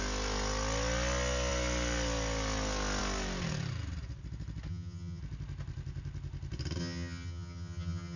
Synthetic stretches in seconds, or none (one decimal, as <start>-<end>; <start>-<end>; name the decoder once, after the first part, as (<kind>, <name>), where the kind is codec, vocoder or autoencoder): 4.7-5.2 (vocoder, HiFi-GAN); 6.8-8.2